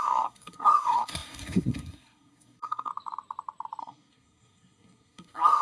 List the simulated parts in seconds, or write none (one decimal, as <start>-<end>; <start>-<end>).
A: 0.0-2.9; 3.8-5.6